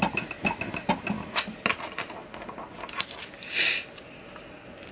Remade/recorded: recorded